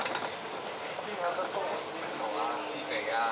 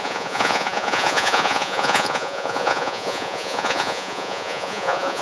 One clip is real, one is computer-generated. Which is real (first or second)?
first